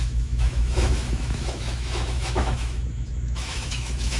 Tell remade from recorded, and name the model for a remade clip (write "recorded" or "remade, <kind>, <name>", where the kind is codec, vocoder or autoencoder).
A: remade, autoencoder, DAC-VAE